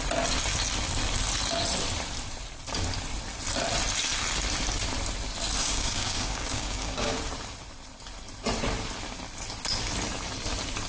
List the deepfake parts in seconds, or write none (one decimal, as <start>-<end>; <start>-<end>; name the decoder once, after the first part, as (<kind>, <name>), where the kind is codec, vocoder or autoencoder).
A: 5.6-7.2 (codec, DAC)